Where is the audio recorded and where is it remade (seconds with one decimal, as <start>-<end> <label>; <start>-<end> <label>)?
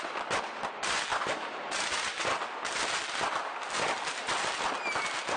0.0-5.4 recorded